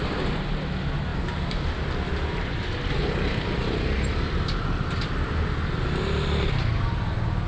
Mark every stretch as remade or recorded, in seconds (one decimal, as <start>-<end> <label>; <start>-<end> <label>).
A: 0.0-7.5 recorded